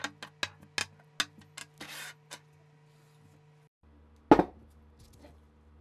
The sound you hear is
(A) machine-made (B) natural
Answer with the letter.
B